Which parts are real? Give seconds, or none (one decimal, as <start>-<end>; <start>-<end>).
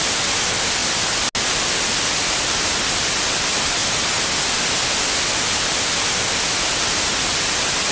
0.0-7.9